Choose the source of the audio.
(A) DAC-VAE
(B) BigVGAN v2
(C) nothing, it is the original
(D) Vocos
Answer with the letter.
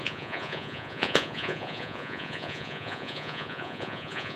D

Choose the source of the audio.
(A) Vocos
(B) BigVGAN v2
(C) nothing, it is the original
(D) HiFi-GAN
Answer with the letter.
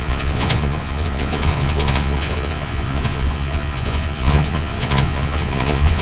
A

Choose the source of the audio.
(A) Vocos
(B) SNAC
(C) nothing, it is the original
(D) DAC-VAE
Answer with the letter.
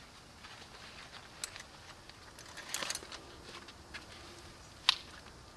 C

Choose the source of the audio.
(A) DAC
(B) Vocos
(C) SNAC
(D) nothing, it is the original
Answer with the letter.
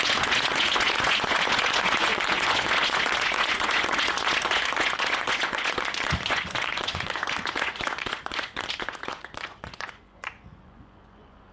B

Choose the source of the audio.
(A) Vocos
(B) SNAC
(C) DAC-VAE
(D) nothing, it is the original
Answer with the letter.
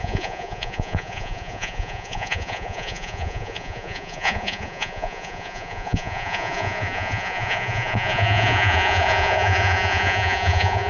A